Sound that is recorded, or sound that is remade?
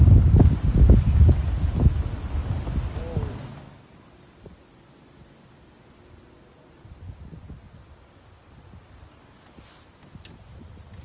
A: recorded